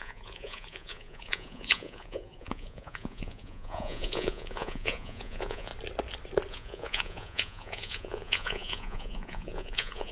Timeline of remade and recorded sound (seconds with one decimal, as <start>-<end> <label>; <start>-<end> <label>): 0.0-5.7 remade; 5.7-6.5 recorded; 6.5-10.1 remade